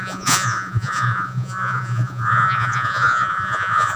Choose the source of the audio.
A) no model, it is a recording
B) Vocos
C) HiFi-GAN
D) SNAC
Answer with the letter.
B